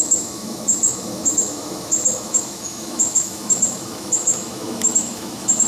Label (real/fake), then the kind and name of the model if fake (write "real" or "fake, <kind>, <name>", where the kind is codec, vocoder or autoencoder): fake, autoencoder, DAC-VAE